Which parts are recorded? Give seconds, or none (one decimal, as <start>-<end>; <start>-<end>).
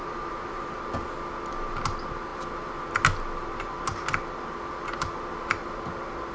0.8-6.3